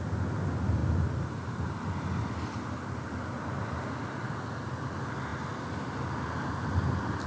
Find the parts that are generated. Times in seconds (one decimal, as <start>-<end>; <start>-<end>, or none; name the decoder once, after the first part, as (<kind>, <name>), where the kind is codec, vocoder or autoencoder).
none